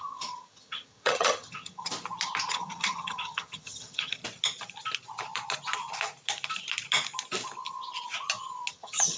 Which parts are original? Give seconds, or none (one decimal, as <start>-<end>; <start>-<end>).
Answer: 1.9-2.5; 4.2-8.7

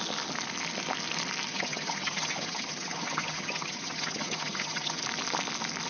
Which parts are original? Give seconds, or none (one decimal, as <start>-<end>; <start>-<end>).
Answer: 0.0-1.5; 5.0-5.9

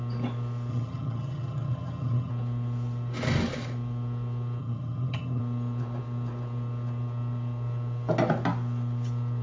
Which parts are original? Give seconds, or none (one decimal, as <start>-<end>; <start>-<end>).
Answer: 0.0-0.7; 2.3-4.6; 5.4-9.4

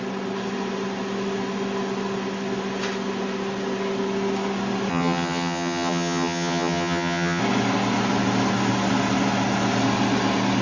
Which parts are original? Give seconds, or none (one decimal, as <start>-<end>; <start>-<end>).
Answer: 0.0-4.9; 7.4-10.6

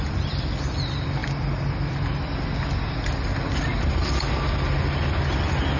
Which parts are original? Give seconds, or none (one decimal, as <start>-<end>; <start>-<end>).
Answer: 0.0-5.8

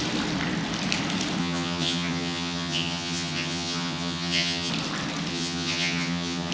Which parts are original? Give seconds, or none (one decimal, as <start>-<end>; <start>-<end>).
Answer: 0.0-1.4; 4.7-5.3

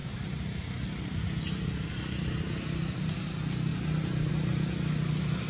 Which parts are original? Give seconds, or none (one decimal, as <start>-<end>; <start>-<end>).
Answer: 0.0-5.5